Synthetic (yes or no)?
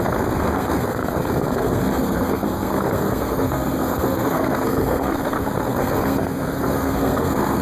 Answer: yes